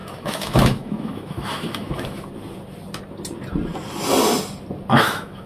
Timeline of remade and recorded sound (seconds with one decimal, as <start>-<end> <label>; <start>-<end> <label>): 0.0-2.3 remade; 2.3-4.9 recorded; 4.9-5.5 remade